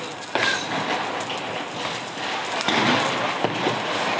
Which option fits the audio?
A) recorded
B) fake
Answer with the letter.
A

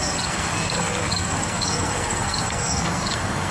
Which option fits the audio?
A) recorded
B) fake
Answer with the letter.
B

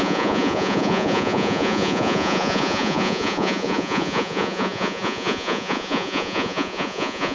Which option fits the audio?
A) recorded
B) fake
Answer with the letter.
B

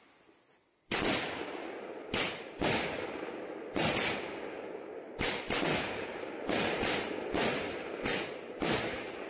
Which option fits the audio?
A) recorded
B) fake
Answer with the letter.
A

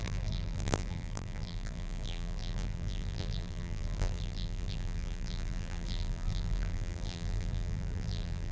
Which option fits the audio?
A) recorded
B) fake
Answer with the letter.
B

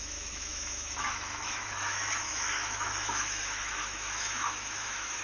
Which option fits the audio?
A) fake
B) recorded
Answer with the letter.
A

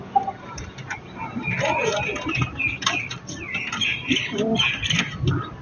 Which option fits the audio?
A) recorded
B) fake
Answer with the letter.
A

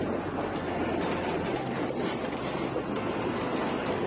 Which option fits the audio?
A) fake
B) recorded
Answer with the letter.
B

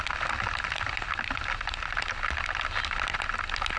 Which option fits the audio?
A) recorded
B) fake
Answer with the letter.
A